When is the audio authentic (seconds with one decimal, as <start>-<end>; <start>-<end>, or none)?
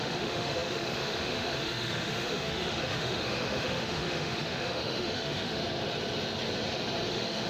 5.6-7.1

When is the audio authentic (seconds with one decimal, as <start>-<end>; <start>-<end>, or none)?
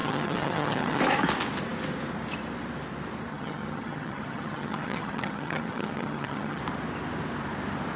1.0-3.3; 6.6-8.0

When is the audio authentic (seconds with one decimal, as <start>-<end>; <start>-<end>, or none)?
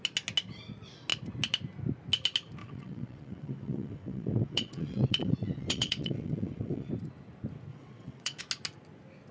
0.0-2.6; 6.9-7.7; 8.4-9.3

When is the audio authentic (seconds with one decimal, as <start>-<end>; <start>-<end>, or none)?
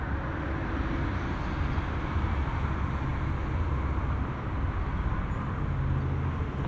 0.0-6.7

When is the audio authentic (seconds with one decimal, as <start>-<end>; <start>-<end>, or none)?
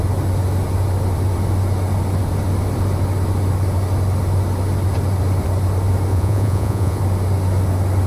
0.0-6.1; 7.0-8.1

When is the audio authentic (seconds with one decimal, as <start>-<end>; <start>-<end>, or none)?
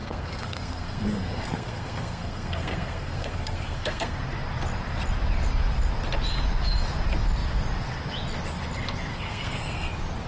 4.2-9.1; 9.9-10.3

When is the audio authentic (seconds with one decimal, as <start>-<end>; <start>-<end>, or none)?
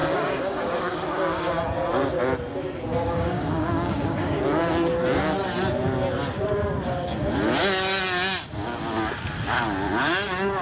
1.5-2.9; 4.4-10.6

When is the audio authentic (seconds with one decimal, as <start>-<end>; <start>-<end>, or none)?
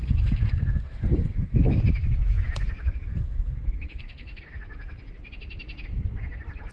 1.8-3.1; 4.4-6.7